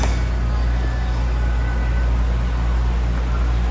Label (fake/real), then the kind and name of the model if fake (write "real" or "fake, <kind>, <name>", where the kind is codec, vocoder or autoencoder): real